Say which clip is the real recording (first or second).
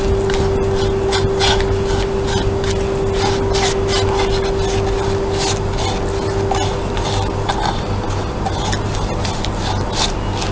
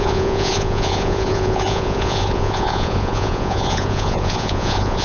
first